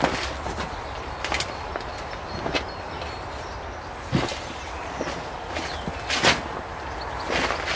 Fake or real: real